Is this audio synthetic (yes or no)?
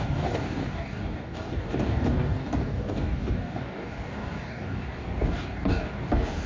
yes